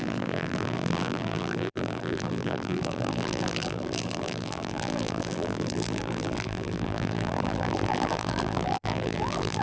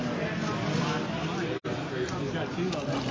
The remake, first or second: first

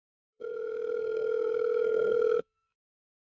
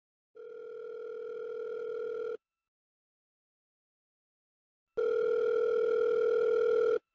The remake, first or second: first